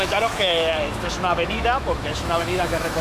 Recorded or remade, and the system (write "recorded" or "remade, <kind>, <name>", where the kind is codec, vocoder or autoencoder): remade, autoencoder, DAC-VAE